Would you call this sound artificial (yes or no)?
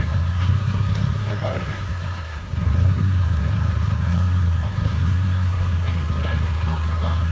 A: yes